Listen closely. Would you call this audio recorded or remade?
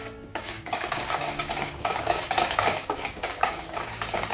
remade